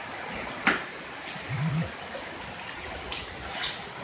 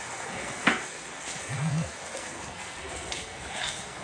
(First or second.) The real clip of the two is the first